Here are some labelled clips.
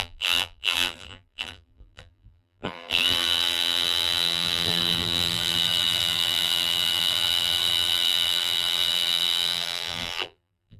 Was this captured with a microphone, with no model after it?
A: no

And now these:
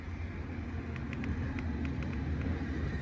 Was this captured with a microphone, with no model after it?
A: yes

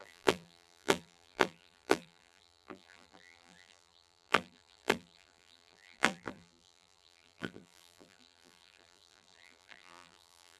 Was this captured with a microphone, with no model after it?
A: no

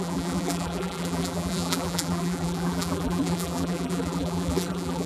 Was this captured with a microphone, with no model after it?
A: no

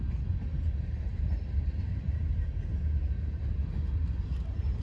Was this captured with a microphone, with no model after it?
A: yes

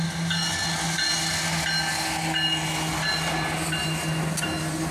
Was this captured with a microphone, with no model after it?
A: yes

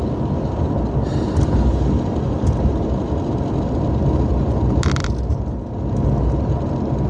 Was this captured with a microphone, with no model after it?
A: yes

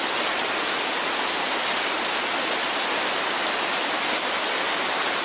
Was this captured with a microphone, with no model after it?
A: yes